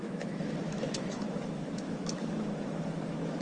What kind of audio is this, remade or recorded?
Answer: remade